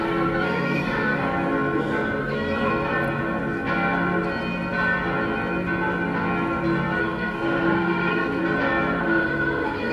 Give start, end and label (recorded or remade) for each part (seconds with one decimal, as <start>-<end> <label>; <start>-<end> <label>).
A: 0.0-1.2 remade; 1.2-2.2 recorded; 2.2-2.7 remade; 2.7-7.0 recorded; 7.0-8.4 remade; 8.4-9.0 recorded; 9.0-9.9 remade